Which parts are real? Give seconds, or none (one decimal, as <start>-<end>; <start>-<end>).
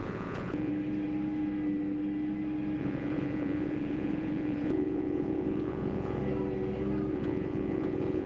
0.7-2.8; 6.2-7.1